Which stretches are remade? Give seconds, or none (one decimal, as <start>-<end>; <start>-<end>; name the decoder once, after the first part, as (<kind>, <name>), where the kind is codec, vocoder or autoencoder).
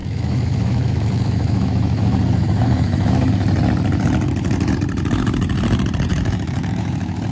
0.0-3.3 (autoencoder, DAC-VAE); 6.1-7.3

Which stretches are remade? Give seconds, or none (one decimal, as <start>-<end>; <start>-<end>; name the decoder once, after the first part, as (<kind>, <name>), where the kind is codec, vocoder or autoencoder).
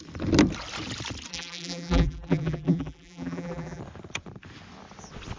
1.3-3.8 (vocoder, BigVGAN v2)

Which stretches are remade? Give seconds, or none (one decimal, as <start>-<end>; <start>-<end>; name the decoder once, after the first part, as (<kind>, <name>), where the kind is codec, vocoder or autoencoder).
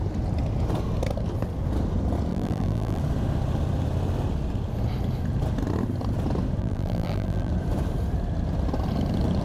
2.3-3.0 (vocoder, BigVGAN v2); 6.6-7.5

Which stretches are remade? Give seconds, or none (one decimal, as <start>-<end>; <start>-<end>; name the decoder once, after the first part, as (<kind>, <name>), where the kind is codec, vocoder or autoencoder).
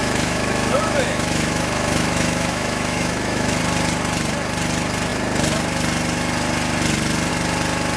0.0-3.6 (autoencoder, DAC-VAE)